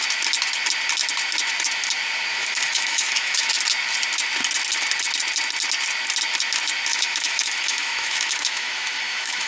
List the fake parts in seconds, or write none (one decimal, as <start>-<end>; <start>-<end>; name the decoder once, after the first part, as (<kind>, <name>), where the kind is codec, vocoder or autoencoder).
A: 2.3-3.5 (autoencoder, DAC-VAE); 6.9-9.5